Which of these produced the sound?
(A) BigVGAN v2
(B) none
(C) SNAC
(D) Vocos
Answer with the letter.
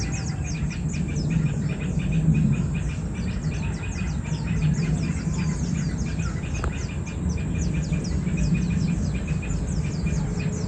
B